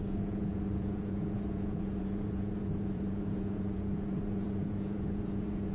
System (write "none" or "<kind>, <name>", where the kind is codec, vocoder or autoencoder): vocoder, Vocos